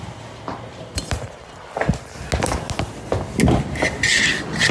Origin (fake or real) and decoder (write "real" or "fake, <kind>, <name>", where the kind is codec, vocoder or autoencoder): real